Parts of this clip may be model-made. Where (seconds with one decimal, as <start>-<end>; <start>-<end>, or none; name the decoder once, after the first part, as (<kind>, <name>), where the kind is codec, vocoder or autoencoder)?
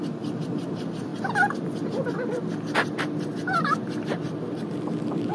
none